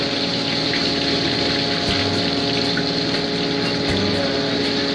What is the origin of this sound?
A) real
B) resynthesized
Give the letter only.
A